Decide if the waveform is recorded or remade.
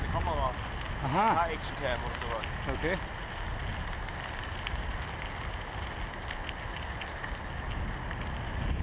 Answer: recorded